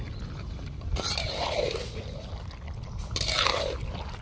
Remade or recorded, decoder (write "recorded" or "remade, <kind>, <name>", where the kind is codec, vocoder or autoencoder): recorded